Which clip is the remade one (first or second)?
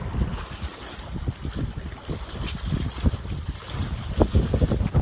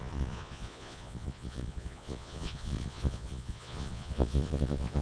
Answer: second